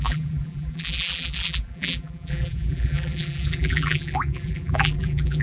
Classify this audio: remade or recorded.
remade